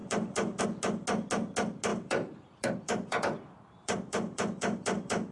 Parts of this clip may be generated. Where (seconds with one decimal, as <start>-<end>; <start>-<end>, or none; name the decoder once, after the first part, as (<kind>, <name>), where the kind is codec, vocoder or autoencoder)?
0.0-0.6 (vocoder, BigVGAN v2); 1.9-5.3

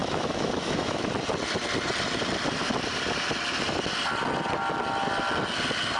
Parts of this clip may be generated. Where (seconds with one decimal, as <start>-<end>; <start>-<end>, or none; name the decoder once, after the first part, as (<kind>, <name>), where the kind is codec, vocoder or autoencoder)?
0.0-1.1 (autoencoder, DAC-VAE)